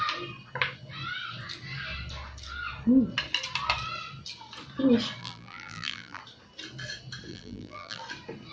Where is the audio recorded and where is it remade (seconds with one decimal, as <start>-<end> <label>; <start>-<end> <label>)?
0.0-5.2 recorded; 5.2-6.2 remade; 6.2-7.3 recorded; 7.3-8.0 remade; 8.0-8.5 recorded